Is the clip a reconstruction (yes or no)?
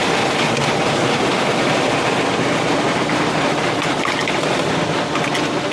no